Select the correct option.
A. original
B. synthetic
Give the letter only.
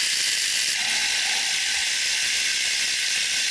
A